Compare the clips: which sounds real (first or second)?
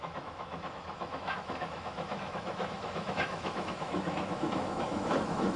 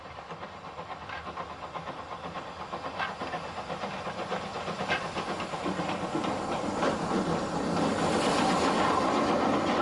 second